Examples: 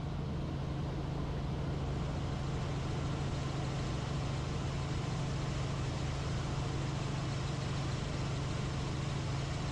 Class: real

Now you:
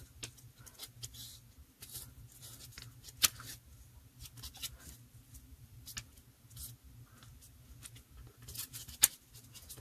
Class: real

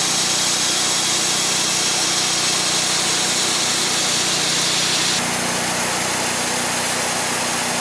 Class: real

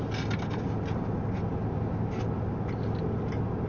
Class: real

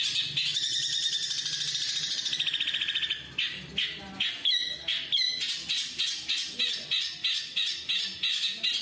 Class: real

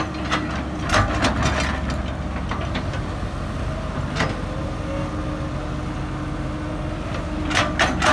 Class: real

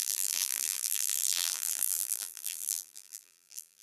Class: fake